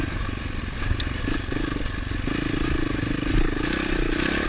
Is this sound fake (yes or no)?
no